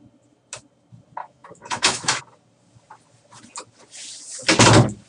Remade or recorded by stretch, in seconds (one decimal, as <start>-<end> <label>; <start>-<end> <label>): 0.0-1.2 recorded; 1.2-2.2 remade; 2.2-5.1 recorded